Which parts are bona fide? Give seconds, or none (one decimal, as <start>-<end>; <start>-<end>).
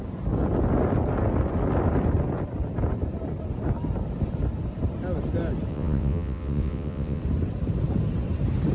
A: 0.0-5.7; 7.2-8.7